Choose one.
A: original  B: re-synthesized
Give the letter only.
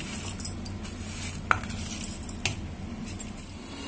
A